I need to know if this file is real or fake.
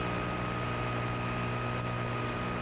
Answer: real